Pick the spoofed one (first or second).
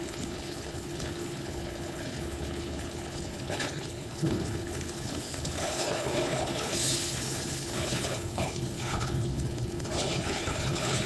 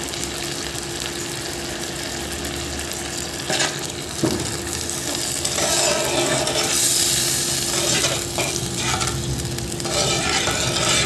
first